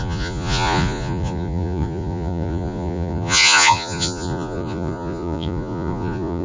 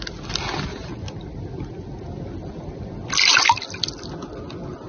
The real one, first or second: second